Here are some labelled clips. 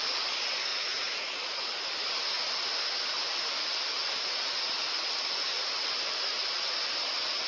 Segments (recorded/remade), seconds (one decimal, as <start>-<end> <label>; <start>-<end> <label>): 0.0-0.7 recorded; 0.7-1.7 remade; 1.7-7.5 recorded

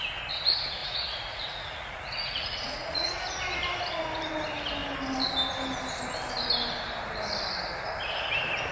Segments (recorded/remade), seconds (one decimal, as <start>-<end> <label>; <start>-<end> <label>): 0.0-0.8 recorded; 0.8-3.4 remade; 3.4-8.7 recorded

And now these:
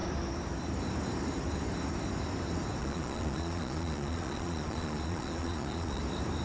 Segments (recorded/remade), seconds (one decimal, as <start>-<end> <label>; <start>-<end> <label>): 0.0-2.8 recorded; 2.8-6.0 remade; 6.0-6.4 recorded